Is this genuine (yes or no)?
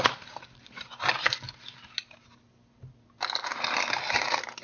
yes